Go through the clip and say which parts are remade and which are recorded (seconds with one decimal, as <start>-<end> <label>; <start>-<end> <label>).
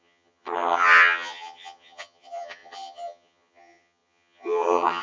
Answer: 0.0-5.0 remade